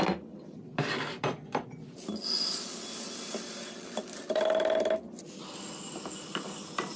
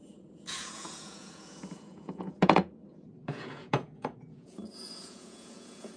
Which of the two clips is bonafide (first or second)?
first